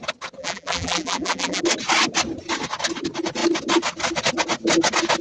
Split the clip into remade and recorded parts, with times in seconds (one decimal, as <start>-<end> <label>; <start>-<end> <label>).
0.0-0.4 recorded; 0.4-1.6 remade; 1.6-5.2 recorded